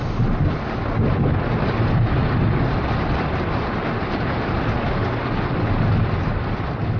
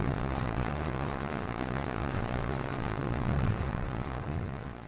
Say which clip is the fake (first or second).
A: second